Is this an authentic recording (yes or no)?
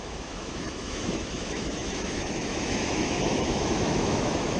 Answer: no